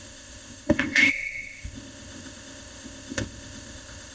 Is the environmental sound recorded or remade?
remade